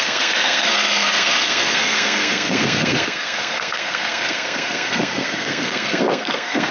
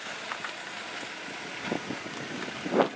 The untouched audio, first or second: second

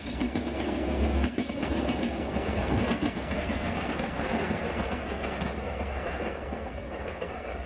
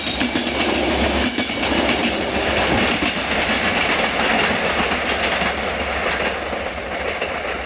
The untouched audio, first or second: second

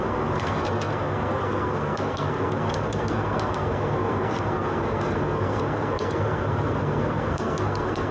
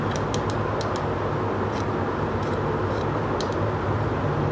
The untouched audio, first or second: second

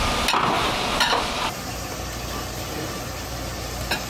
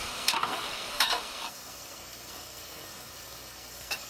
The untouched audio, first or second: first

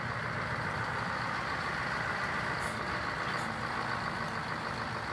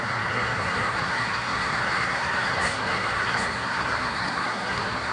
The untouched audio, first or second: first